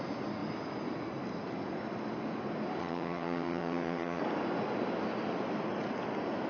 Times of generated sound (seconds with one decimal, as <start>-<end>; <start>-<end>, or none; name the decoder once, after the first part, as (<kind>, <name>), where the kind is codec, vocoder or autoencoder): 2.8-4.2 (vocoder, HiFi-GAN)